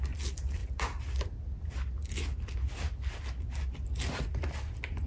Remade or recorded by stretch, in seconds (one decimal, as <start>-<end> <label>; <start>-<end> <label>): 0.0-5.1 recorded